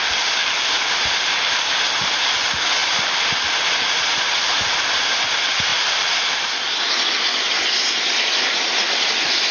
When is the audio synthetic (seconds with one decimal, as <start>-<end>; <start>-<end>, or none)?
0.4-1.7; 2.8-3.7; 5.7-6.5